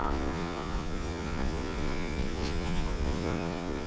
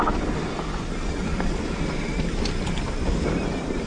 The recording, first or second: second